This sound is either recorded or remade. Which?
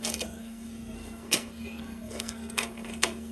remade